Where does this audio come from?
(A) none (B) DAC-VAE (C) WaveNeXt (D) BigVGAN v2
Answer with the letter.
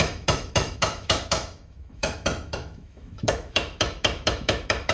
B